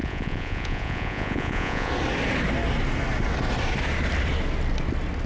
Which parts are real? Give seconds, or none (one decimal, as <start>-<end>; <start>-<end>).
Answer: 1.9-5.3